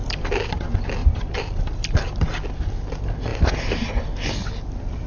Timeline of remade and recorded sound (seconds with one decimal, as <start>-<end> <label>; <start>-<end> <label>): 0.0-0.5 remade; 0.5-1.0 recorded; 1.0-2.7 remade; 2.7-3.3 recorded; 3.3-3.9 remade; 3.9-5.1 recorded